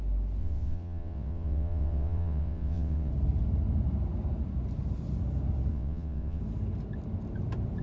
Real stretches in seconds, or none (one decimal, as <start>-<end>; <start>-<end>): 0.0-0.4; 3.1-5.7; 6.4-7.8